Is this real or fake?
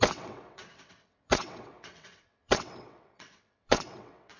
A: fake